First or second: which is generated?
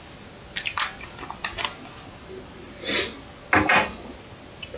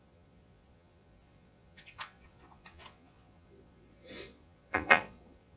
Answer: second